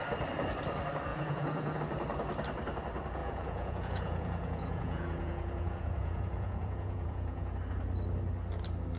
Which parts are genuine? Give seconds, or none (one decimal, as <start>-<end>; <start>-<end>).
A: 0.0-1.1; 1.8-3.2; 7.6-9.0